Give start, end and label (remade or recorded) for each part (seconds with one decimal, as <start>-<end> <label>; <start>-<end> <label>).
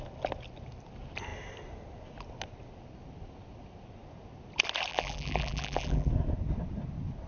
0.0-4.9 recorded; 4.9-6.1 remade; 6.1-7.3 recorded